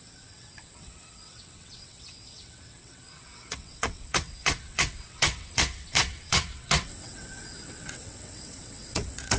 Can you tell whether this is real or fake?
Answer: fake